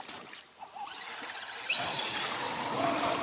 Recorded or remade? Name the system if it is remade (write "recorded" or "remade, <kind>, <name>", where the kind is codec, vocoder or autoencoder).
recorded